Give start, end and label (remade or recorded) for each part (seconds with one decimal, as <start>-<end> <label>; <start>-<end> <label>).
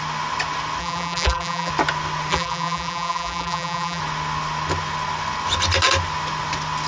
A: 0.0-0.8 recorded; 0.8-1.7 remade; 1.7-2.3 recorded; 2.3-4.0 remade; 4.0-6.9 recorded